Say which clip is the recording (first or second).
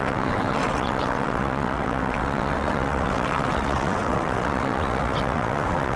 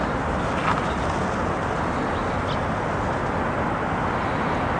second